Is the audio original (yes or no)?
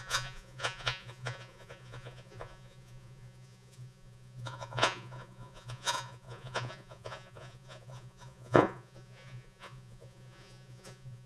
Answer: no